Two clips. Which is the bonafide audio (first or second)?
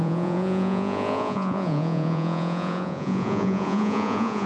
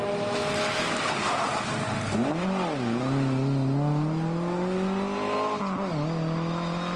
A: second